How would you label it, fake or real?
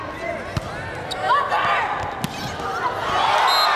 real